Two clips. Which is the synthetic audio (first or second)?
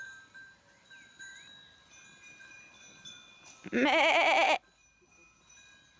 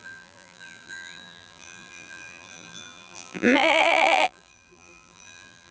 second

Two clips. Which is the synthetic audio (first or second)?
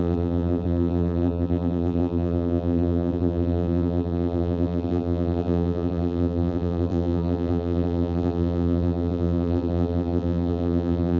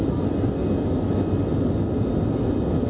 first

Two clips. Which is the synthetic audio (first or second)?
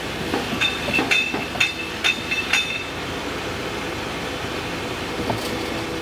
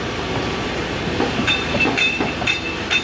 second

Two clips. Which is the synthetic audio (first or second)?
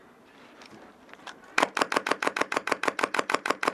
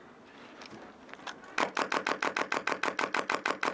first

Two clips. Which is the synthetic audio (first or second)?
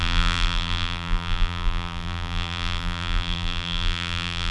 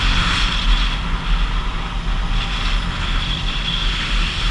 first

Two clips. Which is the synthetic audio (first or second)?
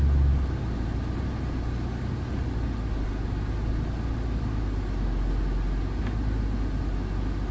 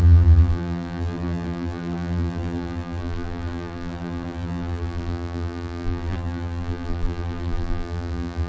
second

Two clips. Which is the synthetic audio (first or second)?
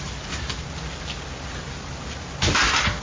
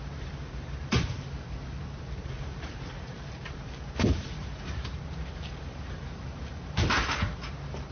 second